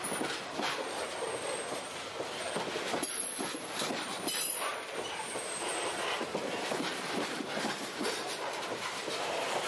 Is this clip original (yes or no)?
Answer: no